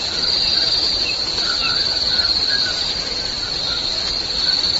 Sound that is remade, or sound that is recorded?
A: remade